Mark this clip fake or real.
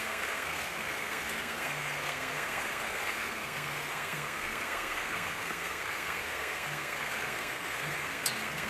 fake